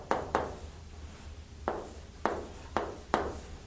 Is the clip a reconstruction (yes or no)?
no